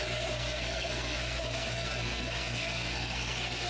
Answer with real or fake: fake